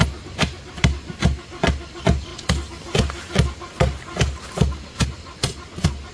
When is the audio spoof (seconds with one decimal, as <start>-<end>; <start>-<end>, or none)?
none